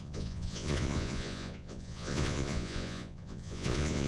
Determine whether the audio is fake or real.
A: fake